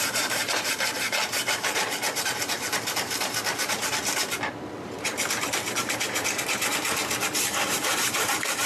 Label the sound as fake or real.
fake